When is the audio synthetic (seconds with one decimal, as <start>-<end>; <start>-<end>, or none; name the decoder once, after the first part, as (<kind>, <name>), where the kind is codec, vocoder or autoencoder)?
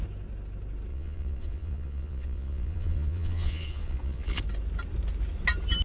0.9-4.4 (vocoder, Vocos)